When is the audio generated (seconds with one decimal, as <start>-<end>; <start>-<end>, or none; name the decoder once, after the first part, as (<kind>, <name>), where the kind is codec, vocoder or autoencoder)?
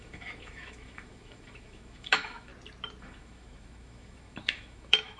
0.0-2.5 (autoencoder, DAC-VAE); 3.0-5.2